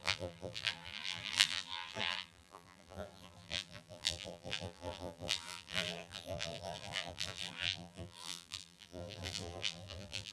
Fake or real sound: fake